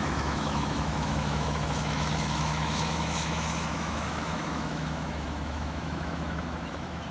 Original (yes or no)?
no